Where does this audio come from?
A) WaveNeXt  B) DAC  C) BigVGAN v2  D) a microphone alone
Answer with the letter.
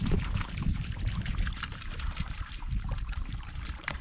C